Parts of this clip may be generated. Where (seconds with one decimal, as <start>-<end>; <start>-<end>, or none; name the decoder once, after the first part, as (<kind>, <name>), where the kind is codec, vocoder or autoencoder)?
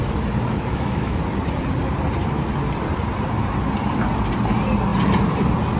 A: 0.7-1.2 (autoencoder, DAC-VAE)